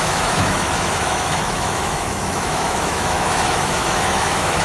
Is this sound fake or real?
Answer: fake